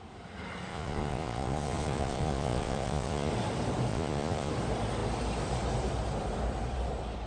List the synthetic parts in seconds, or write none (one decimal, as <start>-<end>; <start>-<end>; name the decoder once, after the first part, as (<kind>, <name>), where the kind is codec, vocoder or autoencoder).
0.7-3.3 (vocoder, Vocos); 3.9-4.5